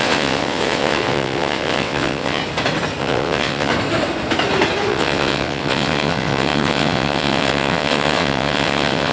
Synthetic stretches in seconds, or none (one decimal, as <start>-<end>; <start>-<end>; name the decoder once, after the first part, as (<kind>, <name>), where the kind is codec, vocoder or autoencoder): 0.0-2.4 (vocoder, WaveNeXt); 3.0-3.7; 4.9-9.1